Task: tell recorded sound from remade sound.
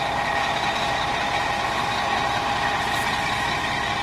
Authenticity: recorded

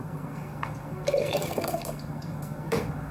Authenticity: remade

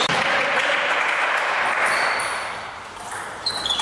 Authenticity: recorded